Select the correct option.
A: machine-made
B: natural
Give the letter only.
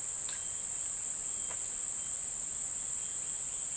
B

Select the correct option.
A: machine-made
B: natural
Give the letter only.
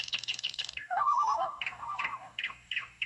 A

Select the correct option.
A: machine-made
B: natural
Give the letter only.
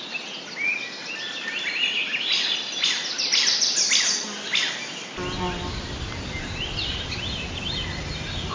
B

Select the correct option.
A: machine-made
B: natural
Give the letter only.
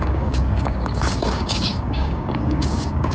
A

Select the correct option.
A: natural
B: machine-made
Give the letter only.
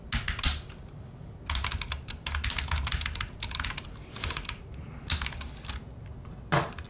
A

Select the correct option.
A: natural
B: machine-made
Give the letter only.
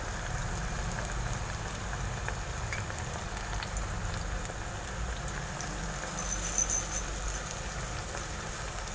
A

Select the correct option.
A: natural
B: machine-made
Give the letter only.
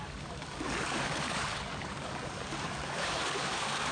B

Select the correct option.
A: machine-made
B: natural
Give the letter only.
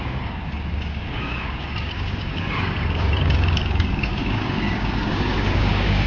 A